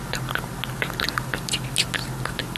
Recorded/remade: recorded